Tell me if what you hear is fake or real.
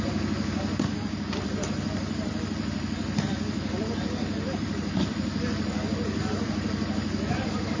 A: fake